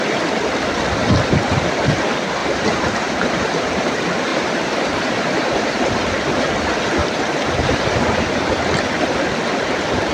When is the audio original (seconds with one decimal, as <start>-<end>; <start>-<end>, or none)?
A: 0.0-2.4; 3.8-4.3; 6.0-7.0; 8.4-10.1

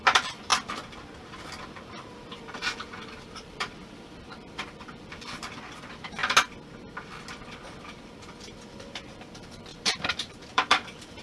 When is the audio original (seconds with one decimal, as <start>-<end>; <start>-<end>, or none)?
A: 0.5-1.6; 6.2-7.8

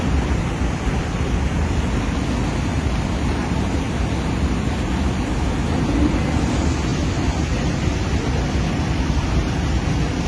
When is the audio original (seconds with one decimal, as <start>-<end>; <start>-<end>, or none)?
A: 0.0-10.3

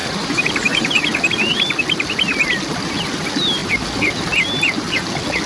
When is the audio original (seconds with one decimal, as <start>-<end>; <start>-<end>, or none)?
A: 1.3-5.5

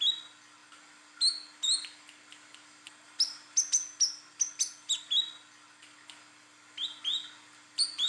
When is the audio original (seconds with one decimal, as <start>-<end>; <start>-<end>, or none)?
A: 0.0-8.1

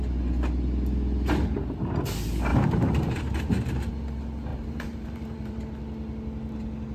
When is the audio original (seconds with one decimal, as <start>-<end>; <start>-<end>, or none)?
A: 0.0-2.5; 3.9-4.5; 5.6-6.9

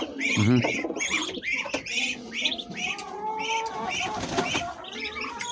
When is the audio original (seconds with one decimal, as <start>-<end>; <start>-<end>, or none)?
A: 0.0-5.5

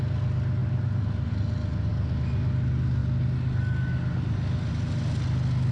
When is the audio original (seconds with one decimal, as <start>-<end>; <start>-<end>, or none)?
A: 0.0-5.7